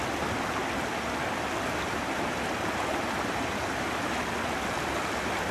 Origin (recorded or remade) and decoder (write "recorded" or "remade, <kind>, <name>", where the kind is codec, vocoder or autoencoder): recorded